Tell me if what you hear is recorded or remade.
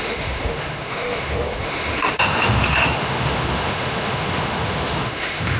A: remade